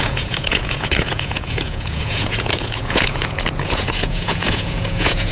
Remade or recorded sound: remade